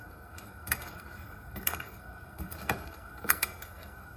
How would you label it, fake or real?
fake